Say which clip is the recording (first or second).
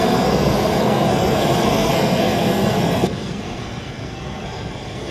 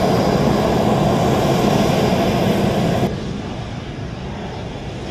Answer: second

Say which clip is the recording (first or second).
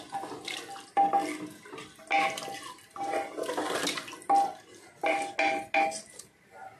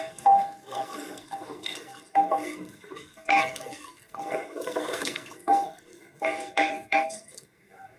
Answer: first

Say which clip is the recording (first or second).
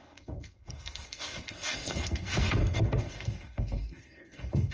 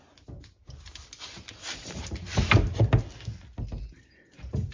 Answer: second